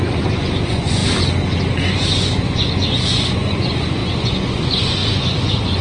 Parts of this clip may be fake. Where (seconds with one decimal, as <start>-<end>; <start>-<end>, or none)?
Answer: 0.0-1.0; 1.7-5.8